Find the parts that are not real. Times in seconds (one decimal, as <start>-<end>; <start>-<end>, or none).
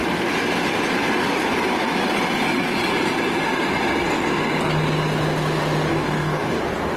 5.9-6.6